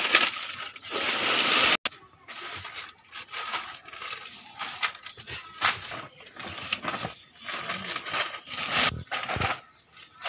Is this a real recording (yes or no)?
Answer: yes